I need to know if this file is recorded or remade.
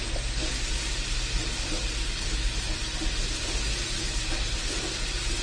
recorded